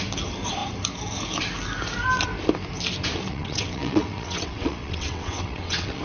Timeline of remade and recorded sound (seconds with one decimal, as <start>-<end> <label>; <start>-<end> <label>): 0.0-3.3 recorded; 3.3-6.0 remade